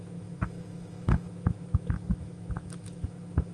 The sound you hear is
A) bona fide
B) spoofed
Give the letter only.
B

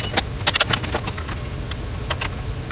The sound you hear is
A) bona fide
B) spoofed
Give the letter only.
A